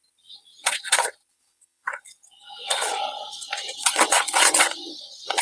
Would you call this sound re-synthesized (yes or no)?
yes